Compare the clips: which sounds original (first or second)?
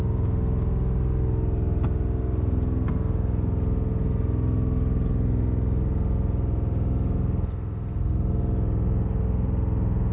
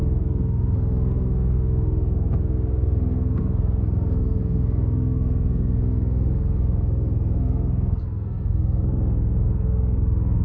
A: first